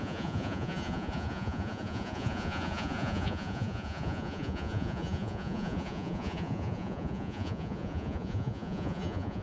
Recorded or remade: remade